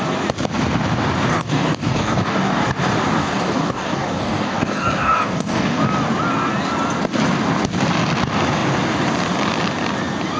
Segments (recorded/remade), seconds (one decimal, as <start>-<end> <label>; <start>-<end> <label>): 0.0-1.3 recorded; 1.3-2.6 remade; 2.6-3.2 recorded; 3.2-5.8 remade; 5.8-10.4 recorded